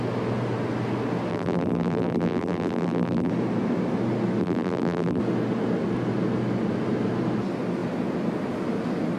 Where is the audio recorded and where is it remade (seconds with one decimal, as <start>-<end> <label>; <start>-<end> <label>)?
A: 0.0-1.3 recorded; 1.3-3.3 remade; 3.3-4.4 recorded; 4.4-5.2 remade; 5.2-9.2 recorded